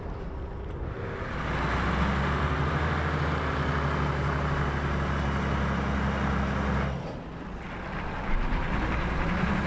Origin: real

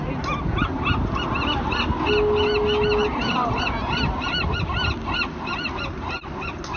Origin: real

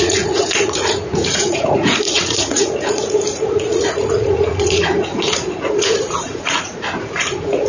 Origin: fake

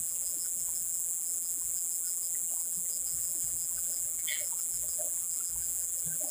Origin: fake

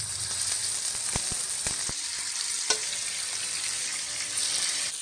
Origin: real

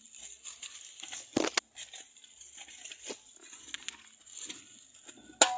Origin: real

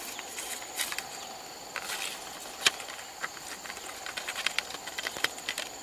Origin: real